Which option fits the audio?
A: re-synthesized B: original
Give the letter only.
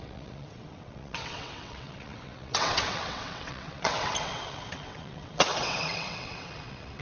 A